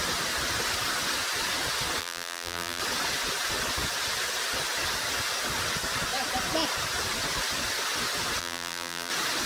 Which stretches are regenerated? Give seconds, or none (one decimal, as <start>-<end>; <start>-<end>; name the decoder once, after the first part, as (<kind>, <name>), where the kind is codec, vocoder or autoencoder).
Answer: 2.0-2.8 (vocoder, BigVGAN v2); 8.4-9.1